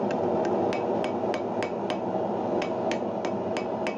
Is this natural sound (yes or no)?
yes